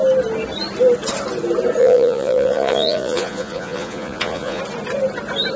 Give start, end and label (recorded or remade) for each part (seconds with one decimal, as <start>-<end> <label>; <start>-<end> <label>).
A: 0.0-1.8 recorded; 1.8-4.6 remade; 4.6-5.6 recorded